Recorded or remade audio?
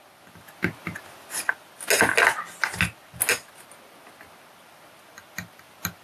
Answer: recorded